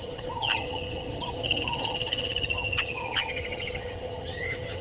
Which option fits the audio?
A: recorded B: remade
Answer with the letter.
B